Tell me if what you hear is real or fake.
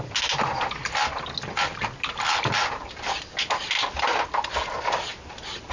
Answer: real